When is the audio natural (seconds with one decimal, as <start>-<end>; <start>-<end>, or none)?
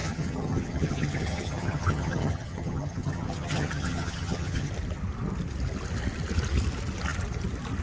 4.7-7.8